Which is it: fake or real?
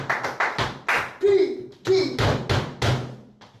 real